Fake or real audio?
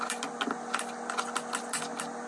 real